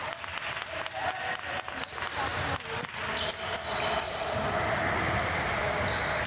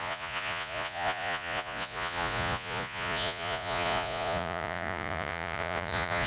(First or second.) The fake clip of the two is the second